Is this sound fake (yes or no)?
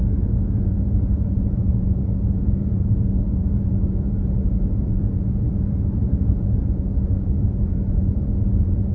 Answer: yes